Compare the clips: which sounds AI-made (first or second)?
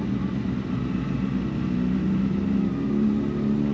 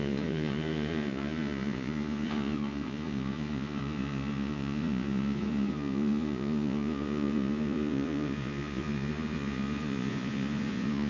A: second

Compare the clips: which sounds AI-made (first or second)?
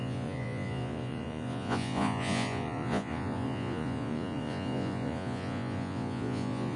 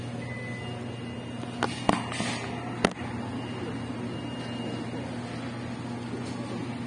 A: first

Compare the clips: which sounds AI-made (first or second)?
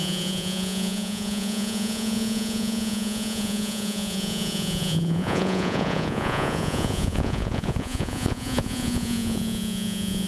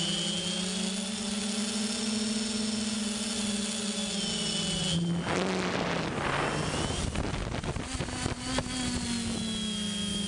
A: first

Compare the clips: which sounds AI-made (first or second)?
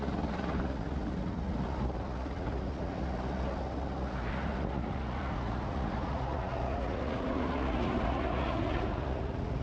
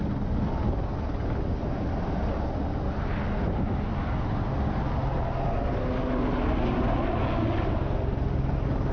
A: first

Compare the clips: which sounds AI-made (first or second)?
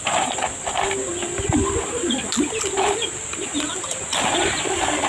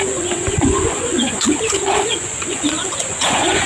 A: second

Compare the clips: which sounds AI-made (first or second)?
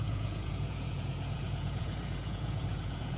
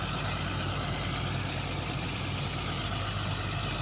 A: first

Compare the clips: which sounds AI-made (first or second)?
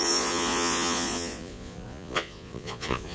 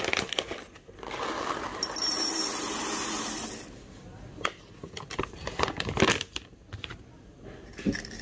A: first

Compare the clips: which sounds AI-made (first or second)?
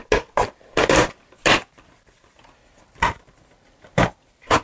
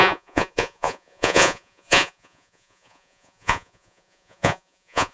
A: second